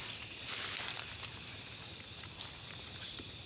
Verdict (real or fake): fake